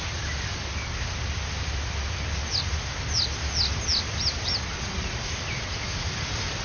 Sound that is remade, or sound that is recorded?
recorded